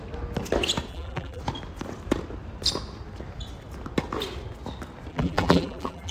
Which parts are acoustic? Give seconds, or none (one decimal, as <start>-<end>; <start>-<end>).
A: 0.0-0.9; 1.4-5.1